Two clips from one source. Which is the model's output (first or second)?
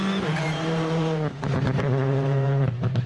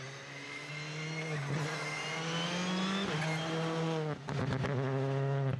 first